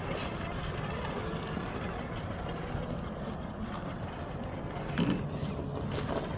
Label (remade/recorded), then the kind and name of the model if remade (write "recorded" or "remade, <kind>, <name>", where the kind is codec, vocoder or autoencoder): recorded